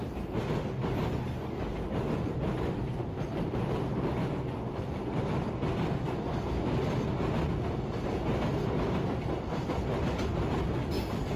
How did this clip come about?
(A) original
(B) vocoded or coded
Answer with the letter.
A